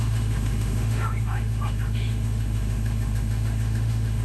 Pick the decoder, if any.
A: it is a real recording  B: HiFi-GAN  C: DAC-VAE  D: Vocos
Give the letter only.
C